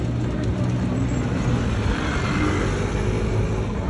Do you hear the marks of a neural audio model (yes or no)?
no